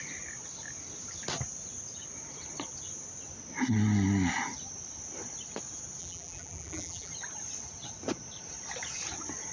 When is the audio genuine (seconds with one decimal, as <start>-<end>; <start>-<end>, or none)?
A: 0.0-6.0; 7.1-9.5